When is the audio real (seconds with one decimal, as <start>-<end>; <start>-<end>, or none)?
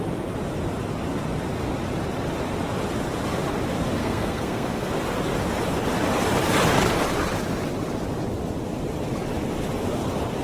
0.0-4.0; 4.9-10.4